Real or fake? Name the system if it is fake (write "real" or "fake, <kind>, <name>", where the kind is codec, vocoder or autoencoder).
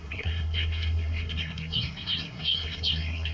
fake, codec, SNAC